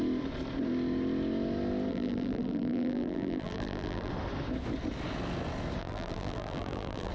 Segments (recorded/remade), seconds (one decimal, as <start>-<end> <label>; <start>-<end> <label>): 0.0-1.9 recorded; 1.9-4.1 remade; 4.1-5.8 recorded; 5.8-7.1 remade